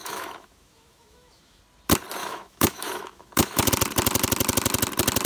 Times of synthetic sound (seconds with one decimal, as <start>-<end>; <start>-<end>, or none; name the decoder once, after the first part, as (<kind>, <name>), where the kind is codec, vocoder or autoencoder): 0.0-1.6 (autoencoder, DAC-VAE); 2.2-3.7